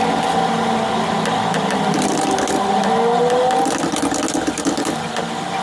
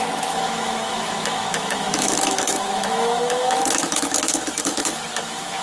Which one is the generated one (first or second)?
second